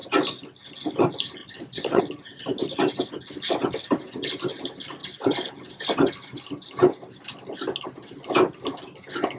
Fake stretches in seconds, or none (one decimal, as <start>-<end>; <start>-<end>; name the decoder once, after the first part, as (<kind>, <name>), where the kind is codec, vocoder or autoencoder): 1.4-2.0 (vocoder, Vocos)